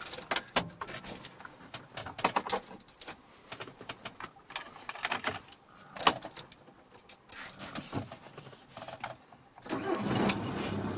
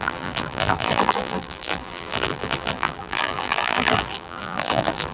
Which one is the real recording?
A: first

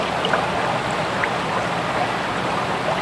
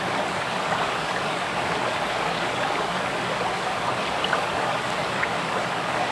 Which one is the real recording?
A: first